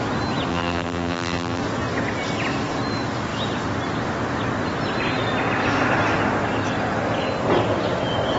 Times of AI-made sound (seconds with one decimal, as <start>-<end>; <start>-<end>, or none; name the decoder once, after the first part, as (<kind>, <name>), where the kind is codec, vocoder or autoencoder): 0.5-1.6 (vocoder, BigVGAN v2)